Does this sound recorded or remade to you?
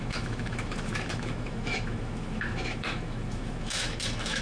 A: remade